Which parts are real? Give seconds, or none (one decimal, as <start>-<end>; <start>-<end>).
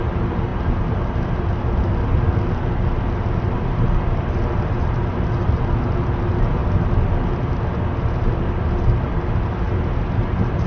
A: 0.0-10.7